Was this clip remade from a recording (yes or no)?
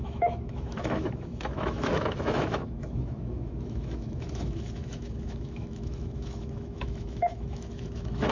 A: yes